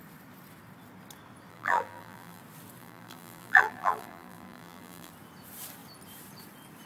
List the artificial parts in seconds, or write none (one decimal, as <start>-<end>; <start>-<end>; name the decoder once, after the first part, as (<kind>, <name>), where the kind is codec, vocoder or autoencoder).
1.5-2.4 (vocoder, BigVGAN v2); 2.8-5.1